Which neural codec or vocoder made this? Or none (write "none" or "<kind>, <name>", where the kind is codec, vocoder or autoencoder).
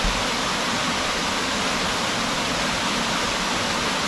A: none